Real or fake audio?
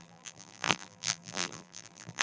fake